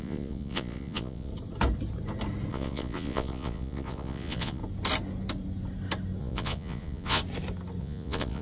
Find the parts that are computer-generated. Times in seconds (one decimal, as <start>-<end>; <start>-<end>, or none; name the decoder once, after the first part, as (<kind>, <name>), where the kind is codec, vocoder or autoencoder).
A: 0.0-1.3 (vocoder, Vocos); 2.5-4.6; 6.2-7.2; 7.8-8.4